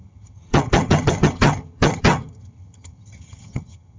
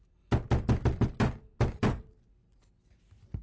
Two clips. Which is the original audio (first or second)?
second